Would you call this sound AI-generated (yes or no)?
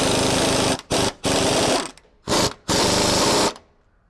no